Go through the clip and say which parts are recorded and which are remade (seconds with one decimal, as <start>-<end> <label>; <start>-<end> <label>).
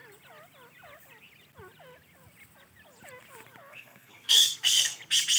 0.0-3.7 recorded; 3.7-5.0 remade; 5.0-5.4 recorded